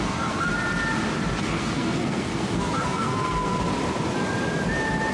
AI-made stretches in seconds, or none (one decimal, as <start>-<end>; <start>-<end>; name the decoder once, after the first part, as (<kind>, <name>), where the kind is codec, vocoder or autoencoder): 0.0-0.5 (codec, SNAC); 1.4-3.6